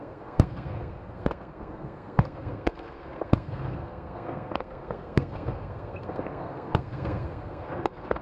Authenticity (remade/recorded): remade